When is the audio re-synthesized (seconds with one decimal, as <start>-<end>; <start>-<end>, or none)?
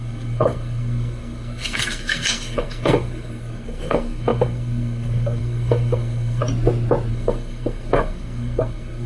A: 0.0-6.4; 7.1-9.1